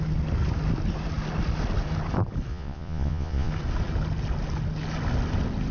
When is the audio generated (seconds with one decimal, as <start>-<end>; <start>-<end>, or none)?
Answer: 2.5-3.5